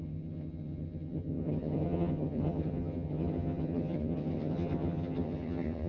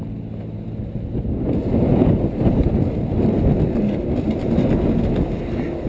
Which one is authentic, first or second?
second